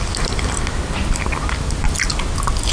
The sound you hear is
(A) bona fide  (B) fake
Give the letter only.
A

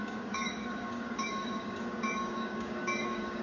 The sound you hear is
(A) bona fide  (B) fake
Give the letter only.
B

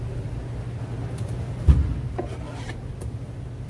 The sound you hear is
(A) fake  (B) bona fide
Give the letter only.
B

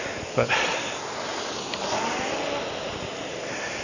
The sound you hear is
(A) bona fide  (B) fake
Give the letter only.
A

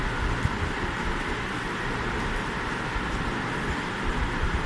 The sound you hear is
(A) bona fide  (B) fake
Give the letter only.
A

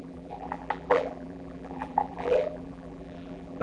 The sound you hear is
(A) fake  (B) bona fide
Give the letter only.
A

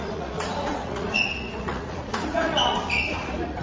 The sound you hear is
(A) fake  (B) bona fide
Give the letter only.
A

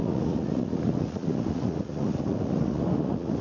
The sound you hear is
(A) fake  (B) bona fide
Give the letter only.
A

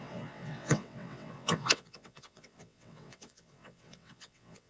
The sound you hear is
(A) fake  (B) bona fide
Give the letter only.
A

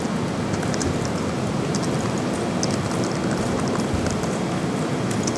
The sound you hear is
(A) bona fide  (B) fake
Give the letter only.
A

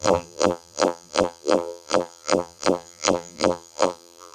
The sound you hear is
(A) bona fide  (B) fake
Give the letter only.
B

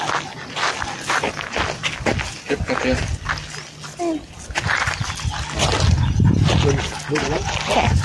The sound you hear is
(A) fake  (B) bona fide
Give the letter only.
B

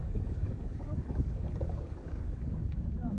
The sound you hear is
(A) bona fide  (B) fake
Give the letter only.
B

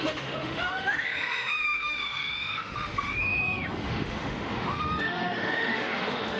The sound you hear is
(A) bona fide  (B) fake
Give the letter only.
B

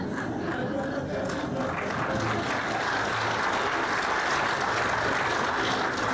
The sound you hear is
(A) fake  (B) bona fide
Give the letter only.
B